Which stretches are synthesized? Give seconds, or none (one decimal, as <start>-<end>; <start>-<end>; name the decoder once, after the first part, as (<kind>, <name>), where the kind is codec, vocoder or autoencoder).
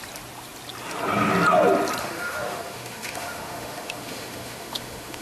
2.0-5.2 (autoencoder, DAC-VAE)